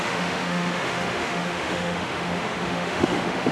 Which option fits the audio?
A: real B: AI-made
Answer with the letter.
B